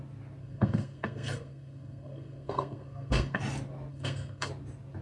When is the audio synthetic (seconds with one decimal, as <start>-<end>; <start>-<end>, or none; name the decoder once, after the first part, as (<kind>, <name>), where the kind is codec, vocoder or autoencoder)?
0.4-3.4 (codec, SNAC); 3.9-4.5